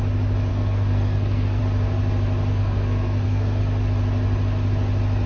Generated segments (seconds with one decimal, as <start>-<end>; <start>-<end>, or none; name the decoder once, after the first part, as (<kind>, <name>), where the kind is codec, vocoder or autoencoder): 0.5-1.6 (codec, SNAC); 2.5-3.6